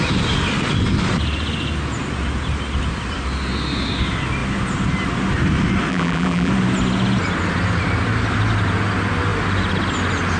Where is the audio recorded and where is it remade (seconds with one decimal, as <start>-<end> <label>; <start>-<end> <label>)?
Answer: 0.0-5.9 recorded; 5.9-6.5 remade; 6.5-10.4 recorded